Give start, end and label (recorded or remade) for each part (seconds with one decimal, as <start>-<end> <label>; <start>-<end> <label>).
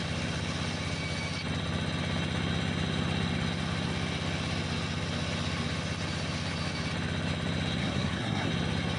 0.0-7.8 recorded; 7.8-8.5 remade; 8.5-9.0 recorded